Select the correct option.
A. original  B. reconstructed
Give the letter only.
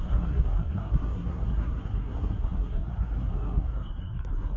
B